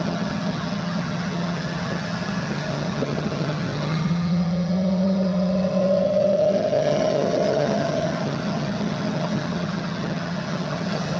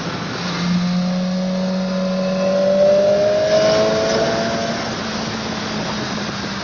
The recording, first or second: second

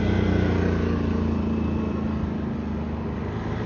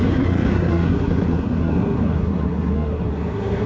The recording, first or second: first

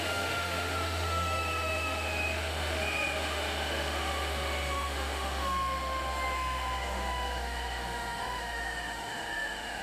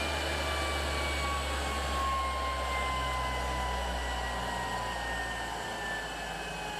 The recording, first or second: second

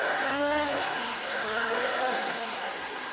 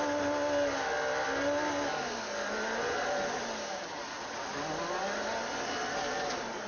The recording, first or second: second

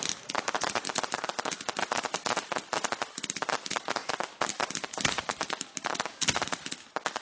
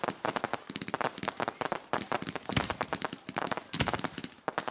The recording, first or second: first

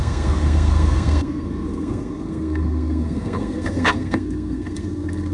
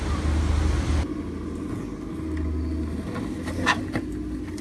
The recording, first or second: second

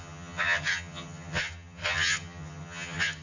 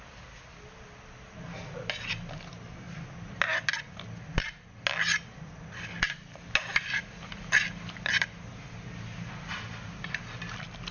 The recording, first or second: second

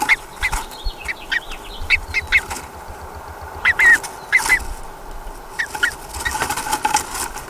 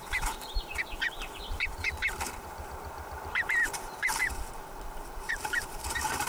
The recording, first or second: first